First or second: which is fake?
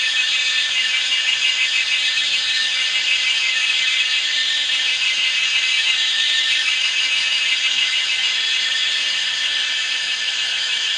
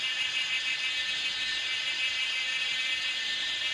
first